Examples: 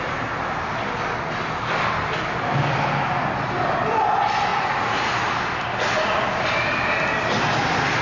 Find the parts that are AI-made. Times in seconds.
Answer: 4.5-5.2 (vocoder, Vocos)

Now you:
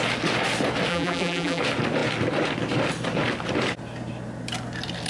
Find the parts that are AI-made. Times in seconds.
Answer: 0.9-1.6 (vocoder, BigVGAN v2)

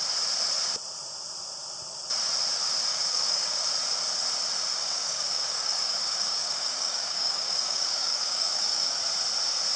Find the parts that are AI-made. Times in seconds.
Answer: 2.9-3.7 (codec, DAC); 4.8-9.0

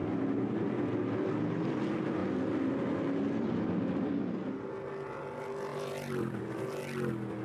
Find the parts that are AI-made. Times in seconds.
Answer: 2.2-2.8 (vocoder, BigVGAN v2); 5.7-6.6

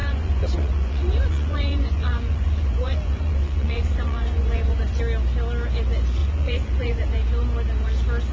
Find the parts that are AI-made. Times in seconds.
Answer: 0.0-5.0 (vocoder, Vocos); 6.2-7.3